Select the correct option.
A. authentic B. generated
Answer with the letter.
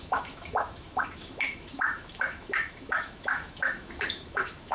B